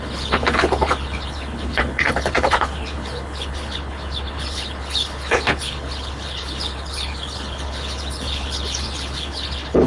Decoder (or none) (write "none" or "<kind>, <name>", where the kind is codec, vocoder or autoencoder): codec, HILCodec